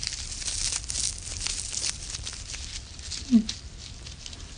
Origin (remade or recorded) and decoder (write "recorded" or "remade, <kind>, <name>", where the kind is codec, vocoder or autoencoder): recorded